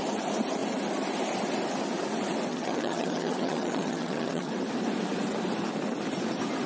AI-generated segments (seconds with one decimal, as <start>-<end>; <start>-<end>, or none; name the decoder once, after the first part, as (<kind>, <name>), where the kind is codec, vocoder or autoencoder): 2.5-4.5 (vocoder, HiFi-GAN)